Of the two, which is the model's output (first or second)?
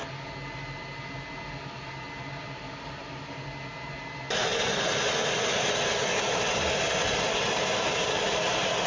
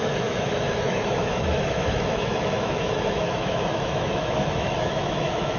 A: second